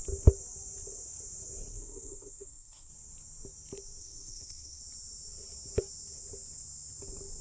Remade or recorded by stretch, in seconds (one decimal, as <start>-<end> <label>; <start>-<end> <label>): 0.0-1.7 recorded; 1.7-2.9 remade; 2.9-4.0 recorded; 4.0-4.8 remade; 4.8-7.4 recorded